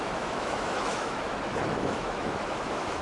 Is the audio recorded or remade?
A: remade